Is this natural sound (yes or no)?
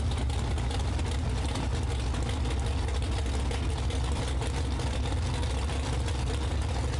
yes